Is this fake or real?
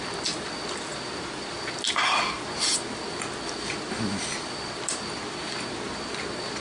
real